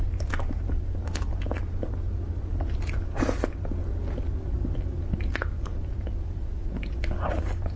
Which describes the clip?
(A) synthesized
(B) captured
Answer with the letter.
B